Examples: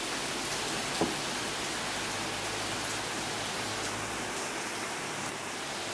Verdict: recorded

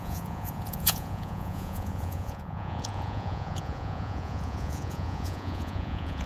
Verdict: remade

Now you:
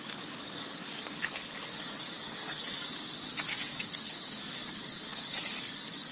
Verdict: remade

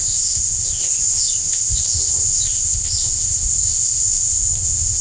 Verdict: remade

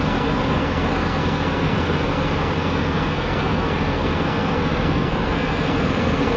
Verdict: remade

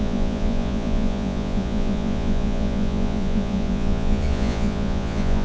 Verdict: remade